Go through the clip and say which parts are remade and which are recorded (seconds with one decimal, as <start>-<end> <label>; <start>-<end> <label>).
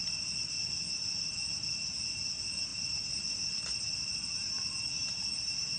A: 0.0-2.7 recorded; 2.7-3.9 remade; 3.9-5.8 recorded